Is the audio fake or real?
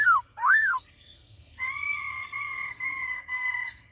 fake